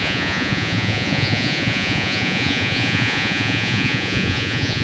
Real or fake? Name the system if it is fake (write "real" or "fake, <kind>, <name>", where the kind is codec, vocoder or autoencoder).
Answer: fake, vocoder, Vocos